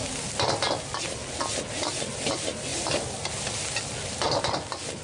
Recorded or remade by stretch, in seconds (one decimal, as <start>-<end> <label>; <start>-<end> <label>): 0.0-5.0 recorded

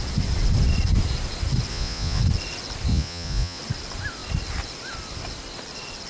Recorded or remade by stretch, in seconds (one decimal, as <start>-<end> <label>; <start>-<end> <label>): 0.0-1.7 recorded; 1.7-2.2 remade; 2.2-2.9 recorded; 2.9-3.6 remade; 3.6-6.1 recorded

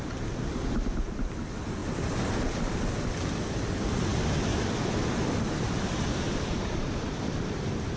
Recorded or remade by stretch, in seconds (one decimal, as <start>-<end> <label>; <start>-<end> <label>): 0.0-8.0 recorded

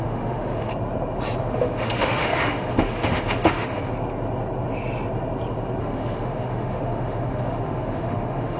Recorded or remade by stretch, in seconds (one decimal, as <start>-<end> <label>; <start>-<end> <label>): 0.0-0.7 remade; 0.7-1.4 recorded; 1.4-3.8 remade; 3.8-5.8 recorded; 5.8-8.6 remade

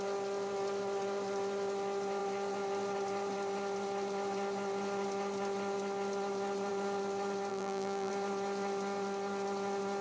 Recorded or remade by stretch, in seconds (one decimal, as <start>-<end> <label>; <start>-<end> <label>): 0.0-7.5 recorded; 7.5-8.1 remade; 8.1-10.0 recorded

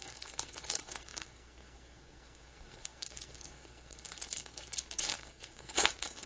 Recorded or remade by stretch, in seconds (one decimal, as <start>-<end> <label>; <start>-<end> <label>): 0.0-6.3 remade